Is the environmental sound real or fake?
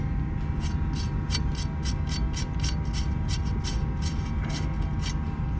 real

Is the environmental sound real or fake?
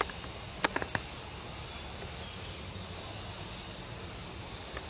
real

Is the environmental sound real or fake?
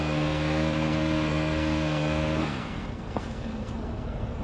fake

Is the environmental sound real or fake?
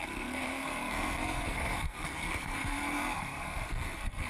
fake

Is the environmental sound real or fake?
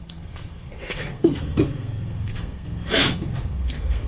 fake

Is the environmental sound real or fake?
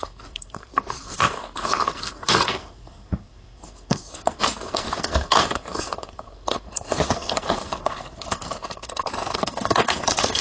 fake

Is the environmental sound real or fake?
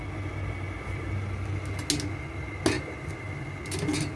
real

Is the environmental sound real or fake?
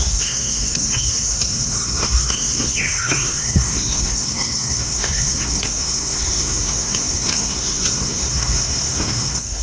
fake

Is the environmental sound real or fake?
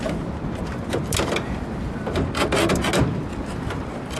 real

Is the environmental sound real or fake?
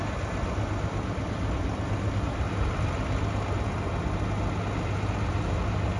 real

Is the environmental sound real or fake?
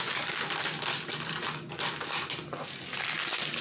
real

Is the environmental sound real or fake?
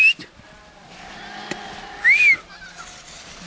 real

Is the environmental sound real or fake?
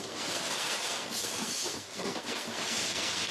fake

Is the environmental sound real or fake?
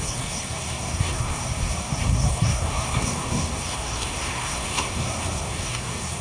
fake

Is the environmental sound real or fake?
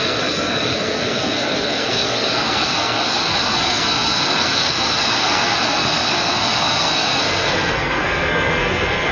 fake